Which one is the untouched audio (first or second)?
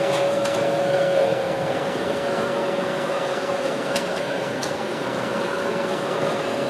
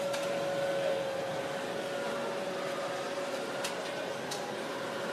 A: second